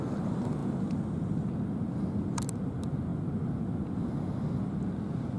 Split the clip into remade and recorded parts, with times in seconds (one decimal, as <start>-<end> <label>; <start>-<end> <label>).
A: 0.0-5.4 recorded